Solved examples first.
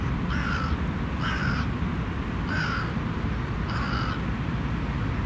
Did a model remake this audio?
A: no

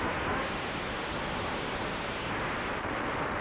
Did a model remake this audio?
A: no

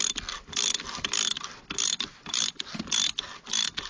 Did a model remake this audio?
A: no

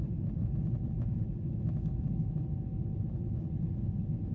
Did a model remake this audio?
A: no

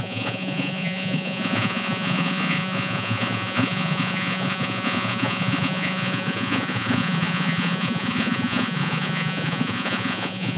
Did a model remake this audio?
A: yes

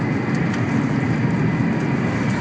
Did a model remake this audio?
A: no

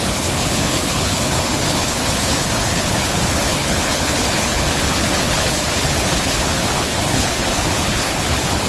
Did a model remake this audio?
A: yes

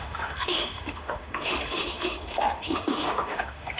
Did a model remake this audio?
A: yes